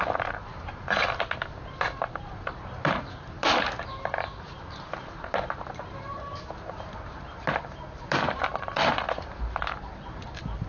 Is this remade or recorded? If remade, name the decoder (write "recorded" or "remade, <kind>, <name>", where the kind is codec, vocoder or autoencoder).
remade, vocoder, BigVGAN v2